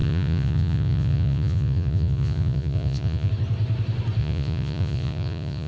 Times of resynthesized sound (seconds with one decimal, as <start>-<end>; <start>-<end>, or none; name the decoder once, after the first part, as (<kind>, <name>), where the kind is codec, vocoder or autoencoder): 0.0-3.3 (vocoder, Vocos); 4.2-5.7

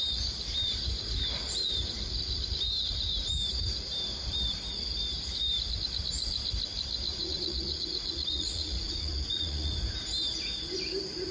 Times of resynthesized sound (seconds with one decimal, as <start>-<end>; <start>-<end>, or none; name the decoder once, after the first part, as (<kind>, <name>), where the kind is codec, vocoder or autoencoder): 7.1-9.7 (vocoder, Vocos)

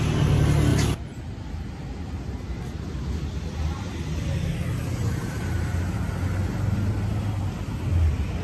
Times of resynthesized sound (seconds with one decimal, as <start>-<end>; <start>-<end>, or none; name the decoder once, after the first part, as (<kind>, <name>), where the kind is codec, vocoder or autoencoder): none

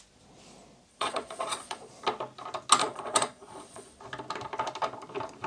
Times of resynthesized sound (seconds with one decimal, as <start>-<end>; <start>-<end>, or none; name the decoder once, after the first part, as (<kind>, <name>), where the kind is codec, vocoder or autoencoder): 0.9-1.9 (vocoder, Vocos); 2.8-4.0

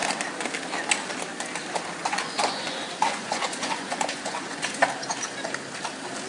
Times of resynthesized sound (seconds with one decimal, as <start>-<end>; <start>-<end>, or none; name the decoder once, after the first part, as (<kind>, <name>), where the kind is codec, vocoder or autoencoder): 2.0-4.8 (vocoder, Vocos)

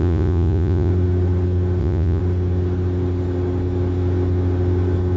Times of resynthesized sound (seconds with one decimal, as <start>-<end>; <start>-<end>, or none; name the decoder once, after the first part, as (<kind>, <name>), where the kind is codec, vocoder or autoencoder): 0.0-0.9 (vocoder, Vocos); 1.8-2.2

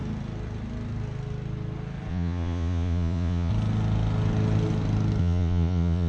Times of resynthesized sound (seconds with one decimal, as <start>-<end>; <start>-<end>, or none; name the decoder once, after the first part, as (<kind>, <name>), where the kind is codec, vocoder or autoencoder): 2.1-3.5 (vocoder, Vocos); 5.2-6.1